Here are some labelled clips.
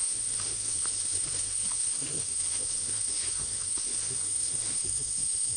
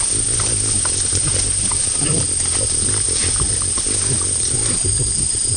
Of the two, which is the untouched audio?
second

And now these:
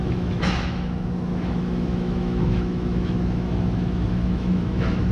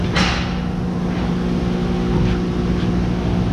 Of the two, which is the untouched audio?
second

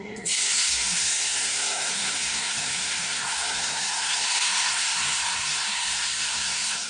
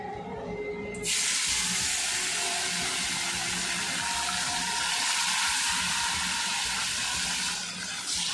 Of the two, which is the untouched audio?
second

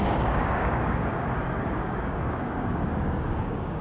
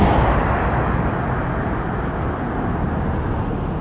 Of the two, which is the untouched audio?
second